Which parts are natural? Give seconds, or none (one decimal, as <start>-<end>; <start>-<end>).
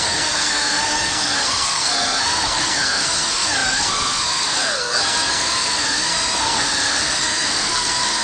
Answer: none